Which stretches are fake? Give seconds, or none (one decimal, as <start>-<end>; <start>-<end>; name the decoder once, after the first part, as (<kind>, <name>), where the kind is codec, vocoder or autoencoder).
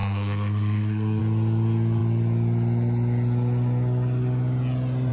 0.0-1.2 (codec, SNAC)